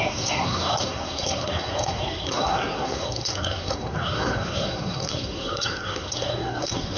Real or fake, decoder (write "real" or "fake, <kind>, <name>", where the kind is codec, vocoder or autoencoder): fake, codec, SNAC